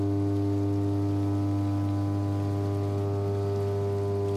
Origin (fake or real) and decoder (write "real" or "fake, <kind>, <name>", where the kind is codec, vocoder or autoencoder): real